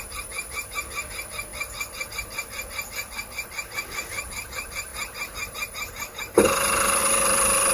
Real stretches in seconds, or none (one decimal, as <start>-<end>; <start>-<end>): 0.0-4.9; 7.0-7.7